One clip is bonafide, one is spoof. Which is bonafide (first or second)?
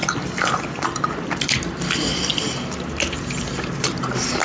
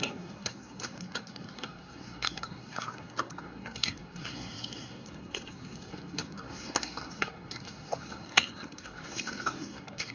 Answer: first